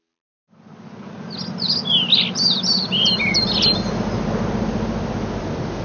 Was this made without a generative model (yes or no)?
yes